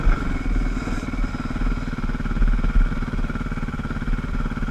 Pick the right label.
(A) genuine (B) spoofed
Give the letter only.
A